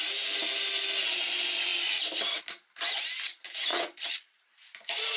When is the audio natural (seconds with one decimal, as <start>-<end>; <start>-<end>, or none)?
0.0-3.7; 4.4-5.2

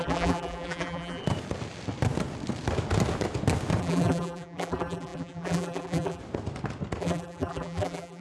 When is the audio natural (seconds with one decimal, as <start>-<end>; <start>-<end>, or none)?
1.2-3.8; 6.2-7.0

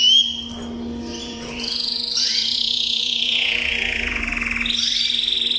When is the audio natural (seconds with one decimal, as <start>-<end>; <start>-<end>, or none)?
0.0-1.2; 4.2-5.6

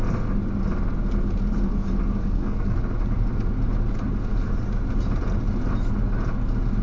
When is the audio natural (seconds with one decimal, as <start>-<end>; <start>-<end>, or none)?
0.0-2.2; 2.8-6.8

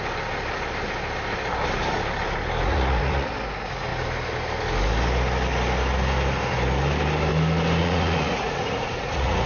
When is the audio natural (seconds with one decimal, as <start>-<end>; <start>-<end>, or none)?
0.0-2.7; 3.3-7.8

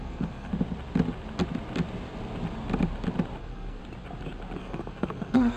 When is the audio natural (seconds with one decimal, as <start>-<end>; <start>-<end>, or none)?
0.5-3.4; 3.8-4.6